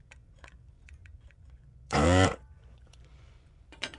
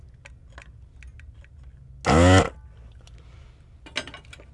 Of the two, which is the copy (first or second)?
first